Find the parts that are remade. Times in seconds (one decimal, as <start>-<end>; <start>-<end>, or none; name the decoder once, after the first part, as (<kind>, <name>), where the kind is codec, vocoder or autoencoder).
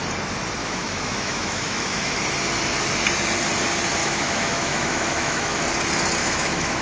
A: 0.6-2.2 (autoencoder, DAC-VAE); 4.0-5.6; 6.2-6.8